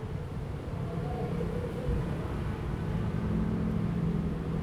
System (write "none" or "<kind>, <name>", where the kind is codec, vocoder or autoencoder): vocoder, BigVGAN v2